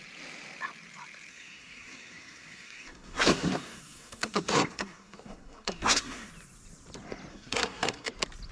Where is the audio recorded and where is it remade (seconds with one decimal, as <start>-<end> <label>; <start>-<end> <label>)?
0.0-1.3 recorded; 1.3-6.3 remade; 6.3-7.3 recorded; 7.3-8.1 remade; 8.1-8.5 recorded